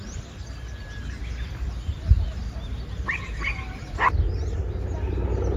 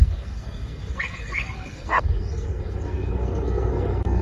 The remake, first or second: second